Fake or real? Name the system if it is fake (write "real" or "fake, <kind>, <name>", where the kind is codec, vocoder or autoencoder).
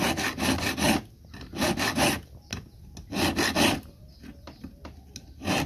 real